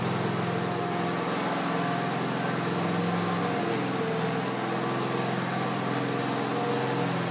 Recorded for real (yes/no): yes